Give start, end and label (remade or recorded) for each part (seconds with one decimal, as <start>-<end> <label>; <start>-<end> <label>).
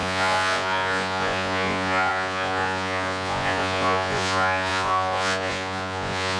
0.0-6.4 remade